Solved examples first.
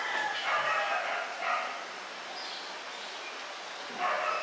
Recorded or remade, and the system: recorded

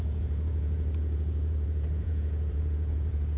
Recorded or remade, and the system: remade, vocoder, Vocos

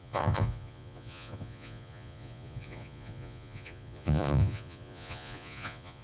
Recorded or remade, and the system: remade, vocoder, Vocos